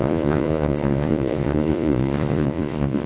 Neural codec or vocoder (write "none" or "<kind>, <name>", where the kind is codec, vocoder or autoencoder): vocoder, Vocos